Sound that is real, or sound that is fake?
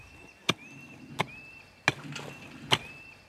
real